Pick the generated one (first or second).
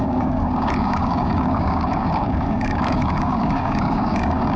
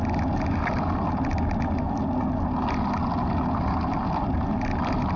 first